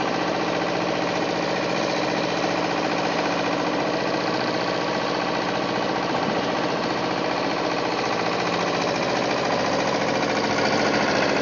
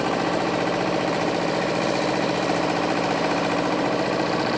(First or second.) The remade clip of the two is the second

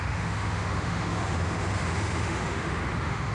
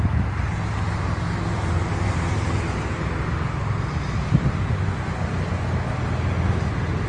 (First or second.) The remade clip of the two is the first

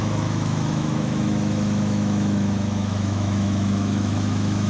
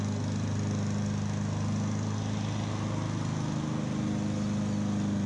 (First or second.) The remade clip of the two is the first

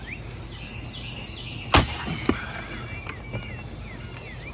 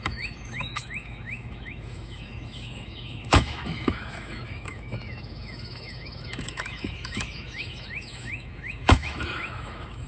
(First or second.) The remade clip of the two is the second